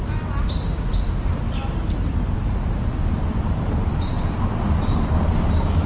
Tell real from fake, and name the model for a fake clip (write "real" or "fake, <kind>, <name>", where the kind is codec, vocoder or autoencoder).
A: real